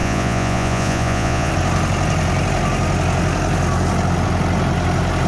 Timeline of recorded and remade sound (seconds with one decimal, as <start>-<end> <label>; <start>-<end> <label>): 0.0-1.5 remade; 1.5-5.3 recorded